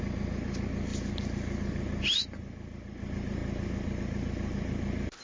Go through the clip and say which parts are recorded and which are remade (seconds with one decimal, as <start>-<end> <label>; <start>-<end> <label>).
0.0-5.2 recorded